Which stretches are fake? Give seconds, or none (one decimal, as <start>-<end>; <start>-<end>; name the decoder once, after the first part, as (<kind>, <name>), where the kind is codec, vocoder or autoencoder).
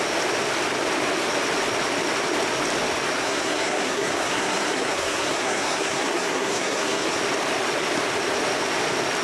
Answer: 3.2-7.2 (codec, SNAC)